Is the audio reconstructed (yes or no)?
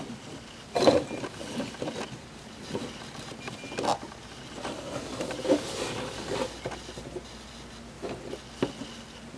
no